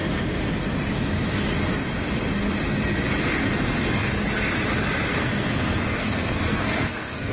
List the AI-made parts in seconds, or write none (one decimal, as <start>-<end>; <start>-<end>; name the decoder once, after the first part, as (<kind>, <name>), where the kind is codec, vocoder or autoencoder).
5.1-7.3 (codec, SNAC)